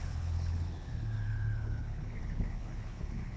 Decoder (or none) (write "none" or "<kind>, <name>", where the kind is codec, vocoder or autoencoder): codec, HILCodec